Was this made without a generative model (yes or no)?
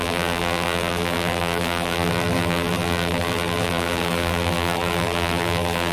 no